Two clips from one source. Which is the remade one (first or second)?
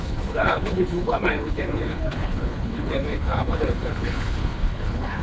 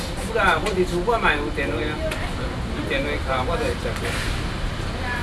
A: first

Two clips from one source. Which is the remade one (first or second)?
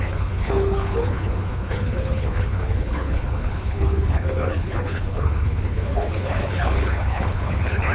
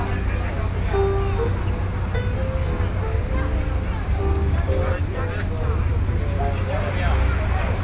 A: first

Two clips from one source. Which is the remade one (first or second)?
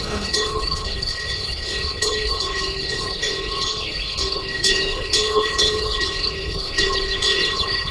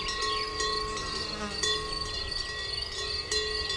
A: first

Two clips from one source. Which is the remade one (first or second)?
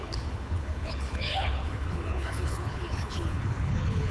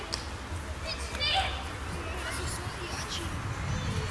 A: first